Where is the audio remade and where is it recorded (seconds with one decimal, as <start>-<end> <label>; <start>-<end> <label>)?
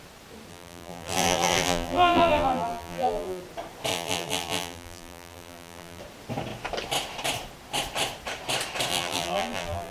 0.0-0.5 recorded; 0.5-3.4 remade; 3.4-3.9 recorded; 3.9-6.0 remade; 6.0-8.9 recorded; 8.9-9.9 remade